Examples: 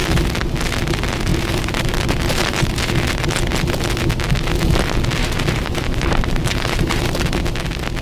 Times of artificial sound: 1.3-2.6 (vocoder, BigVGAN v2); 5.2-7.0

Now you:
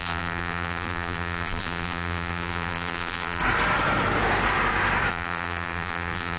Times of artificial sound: 0.0-3.4 (vocoder, BigVGAN v2); 5.1-6.4

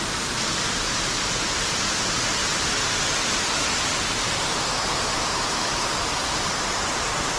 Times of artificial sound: 2.4-4.3 (vocoder, BigVGAN v2); 5.9-7.4

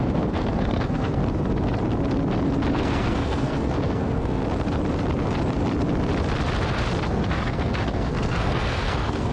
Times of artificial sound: 0.0-1.2 (codec, SNAC); 2.7-4.4; 7.1-9.3